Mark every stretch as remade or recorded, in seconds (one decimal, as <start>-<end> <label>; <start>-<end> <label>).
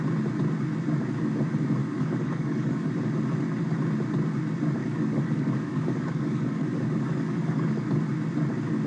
0.0-1.8 recorded; 1.8-2.9 remade; 2.9-4.8 recorded; 4.8-8.0 remade; 8.0-8.9 recorded